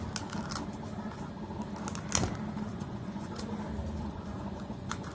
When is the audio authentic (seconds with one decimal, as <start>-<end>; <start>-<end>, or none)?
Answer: 0.0-2.7; 3.3-4.0